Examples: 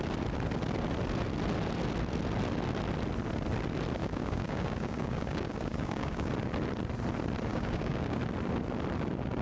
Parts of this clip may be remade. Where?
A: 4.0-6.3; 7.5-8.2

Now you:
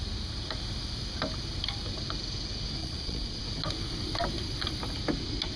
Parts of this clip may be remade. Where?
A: 2.8-3.4

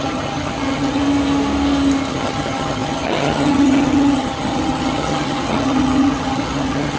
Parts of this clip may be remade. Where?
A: 0.0-1.0; 2.1-7.0

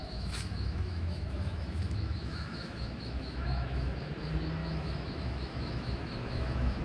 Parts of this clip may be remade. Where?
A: 0.0-4.1; 4.6-6.8

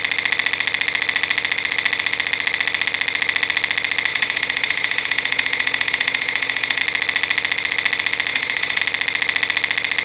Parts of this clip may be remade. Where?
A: 4.1-6.8; 8.3-8.8

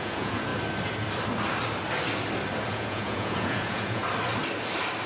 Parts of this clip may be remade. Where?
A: 0.0-0.5; 2.7-4.0

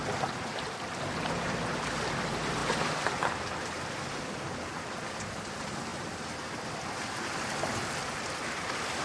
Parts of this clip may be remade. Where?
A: none

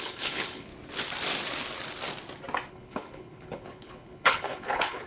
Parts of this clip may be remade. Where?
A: 0.0-0.7; 2.7-5.1